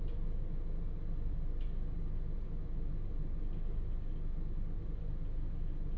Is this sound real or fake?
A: real